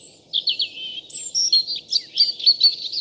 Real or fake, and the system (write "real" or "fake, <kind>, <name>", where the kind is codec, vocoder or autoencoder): real